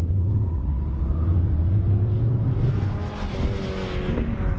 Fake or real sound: real